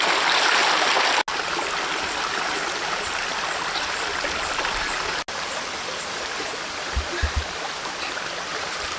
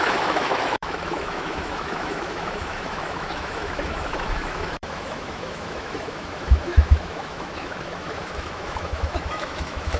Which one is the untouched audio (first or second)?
first